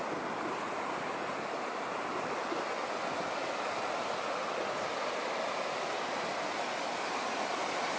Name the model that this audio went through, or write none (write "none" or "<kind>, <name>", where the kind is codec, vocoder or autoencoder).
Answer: none